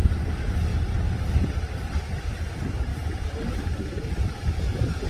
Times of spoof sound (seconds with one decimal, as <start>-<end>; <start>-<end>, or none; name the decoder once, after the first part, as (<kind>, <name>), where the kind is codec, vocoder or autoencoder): 2.9-4.5 (vocoder, BigVGAN v2)